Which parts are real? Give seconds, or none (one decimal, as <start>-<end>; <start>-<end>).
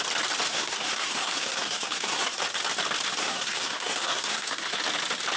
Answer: 0.0-0.5; 2.4-3.2; 4.8-5.4